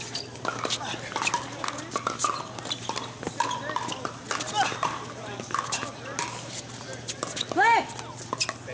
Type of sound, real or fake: real